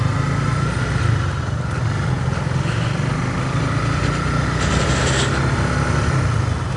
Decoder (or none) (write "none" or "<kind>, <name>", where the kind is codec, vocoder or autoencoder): none